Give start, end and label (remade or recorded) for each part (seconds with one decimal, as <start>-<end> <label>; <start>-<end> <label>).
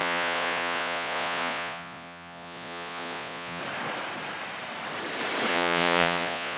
0.0-3.6 remade; 3.6-5.5 recorded; 5.5-6.6 remade